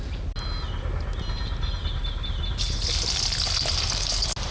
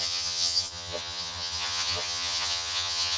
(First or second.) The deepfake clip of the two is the second